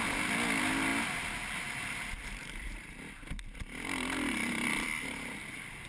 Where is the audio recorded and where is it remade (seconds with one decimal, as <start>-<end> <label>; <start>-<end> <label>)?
0.0-5.9 recorded